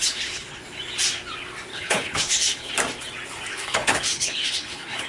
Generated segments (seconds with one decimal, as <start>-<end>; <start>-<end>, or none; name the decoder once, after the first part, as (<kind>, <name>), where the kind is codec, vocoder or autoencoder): 0.0-0.6 (codec, HILCodec); 1.7-2.7; 3.5-5.1